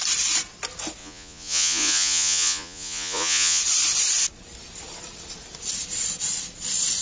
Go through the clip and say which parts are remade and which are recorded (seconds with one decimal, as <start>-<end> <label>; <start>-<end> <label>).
0.0-1.0 recorded; 1.0-3.6 remade; 3.6-7.0 recorded

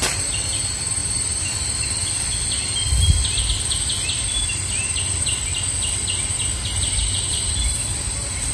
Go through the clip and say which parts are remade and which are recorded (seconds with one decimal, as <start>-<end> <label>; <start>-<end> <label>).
0.0-8.5 recorded

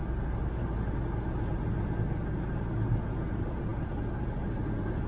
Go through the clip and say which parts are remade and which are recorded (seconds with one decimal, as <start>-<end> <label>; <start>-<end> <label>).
0.0-5.1 recorded

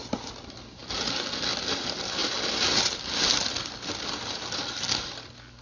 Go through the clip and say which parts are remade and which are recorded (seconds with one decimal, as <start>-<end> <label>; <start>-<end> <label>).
0.0-5.6 recorded

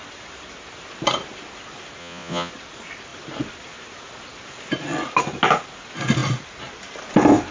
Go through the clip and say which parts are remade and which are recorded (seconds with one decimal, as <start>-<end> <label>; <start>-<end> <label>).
0.0-2.0 recorded; 2.0-2.5 remade; 2.5-7.5 recorded